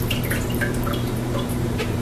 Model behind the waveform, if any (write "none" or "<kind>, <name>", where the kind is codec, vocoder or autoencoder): vocoder, BigVGAN v2